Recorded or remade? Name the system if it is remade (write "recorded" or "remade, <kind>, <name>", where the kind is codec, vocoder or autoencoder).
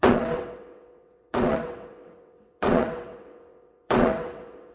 remade, vocoder, WaveNeXt